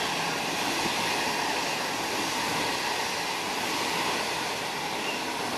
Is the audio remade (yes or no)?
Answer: no